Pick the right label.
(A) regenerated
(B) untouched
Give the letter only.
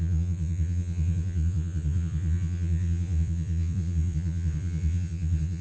A